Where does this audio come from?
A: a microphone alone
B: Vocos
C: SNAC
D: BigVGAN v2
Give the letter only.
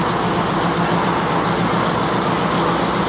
A